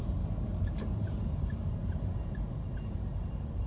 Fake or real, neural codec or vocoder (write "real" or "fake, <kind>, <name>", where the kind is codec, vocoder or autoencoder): fake, vocoder, BigVGAN v2